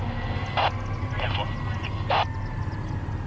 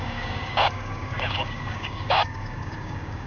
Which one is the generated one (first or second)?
second